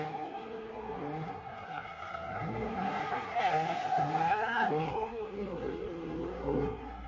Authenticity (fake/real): fake